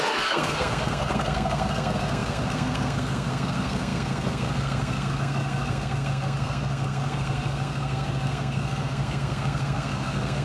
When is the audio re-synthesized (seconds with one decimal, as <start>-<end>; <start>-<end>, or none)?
0.0-10.4